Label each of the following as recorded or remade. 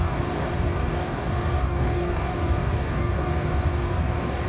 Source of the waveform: remade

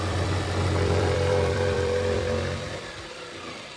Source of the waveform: remade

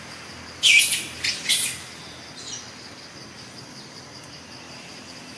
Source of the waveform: recorded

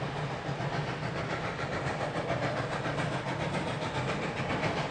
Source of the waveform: recorded